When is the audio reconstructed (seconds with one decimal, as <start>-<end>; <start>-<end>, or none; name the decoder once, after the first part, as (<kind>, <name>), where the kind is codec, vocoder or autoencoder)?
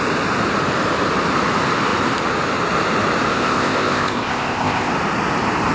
3.3-4.9 (codec, ZipCodec)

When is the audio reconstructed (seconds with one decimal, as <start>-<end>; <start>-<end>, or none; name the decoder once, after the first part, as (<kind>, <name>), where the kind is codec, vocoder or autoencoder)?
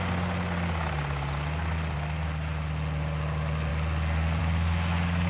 none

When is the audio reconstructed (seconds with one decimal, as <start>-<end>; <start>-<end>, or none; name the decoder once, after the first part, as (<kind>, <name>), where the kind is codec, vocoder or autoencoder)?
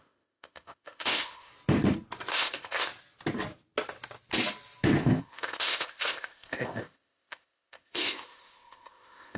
0.0-1.5 (codec, ZipCodec); 2.3-2.9; 5.0-9.4